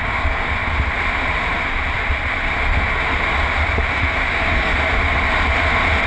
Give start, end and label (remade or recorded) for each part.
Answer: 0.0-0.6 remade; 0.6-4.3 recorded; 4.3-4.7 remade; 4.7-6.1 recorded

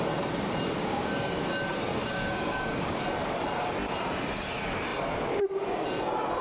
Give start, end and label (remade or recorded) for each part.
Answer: 0.0-0.8 recorded; 0.8-1.5 remade; 1.5-1.9 recorded; 1.9-3.0 remade; 3.0-6.4 recorded

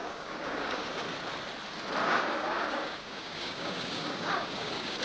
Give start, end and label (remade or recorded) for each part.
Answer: 0.0-1.0 remade; 1.0-2.0 recorded; 2.0-5.0 remade

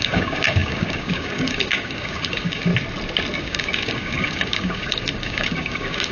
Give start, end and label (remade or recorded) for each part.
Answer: 0.0-2.7 remade; 2.7-3.4 recorded; 3.4-6.1 remade

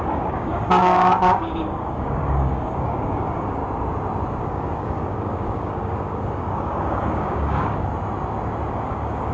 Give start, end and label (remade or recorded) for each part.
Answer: 0.0-3.6 remade; 3.6-4.4 recorded; 4.4-7.9 remade; 7.9-8.7 recorded; 8.7-9.3 remade

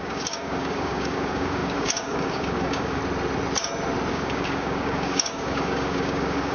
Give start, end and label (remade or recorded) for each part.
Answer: 0.0-3.0 remade; 3.0-4.1 recorded; 4.1-6.5 remade

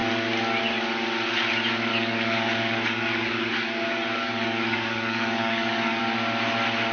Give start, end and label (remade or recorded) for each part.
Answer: 0.0-1.9 recorded; 1.9-6.0 remade; 6.0-6.9 recorded